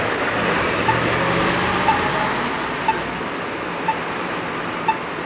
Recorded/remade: recorded